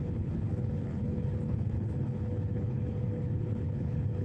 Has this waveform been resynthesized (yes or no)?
yes